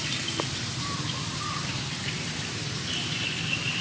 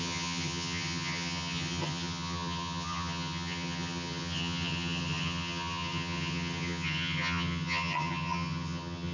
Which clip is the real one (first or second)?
first